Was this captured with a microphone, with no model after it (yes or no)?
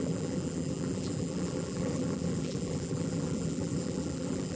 no